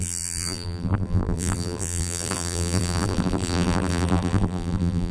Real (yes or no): no